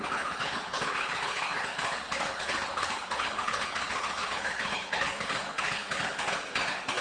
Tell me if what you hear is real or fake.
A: fake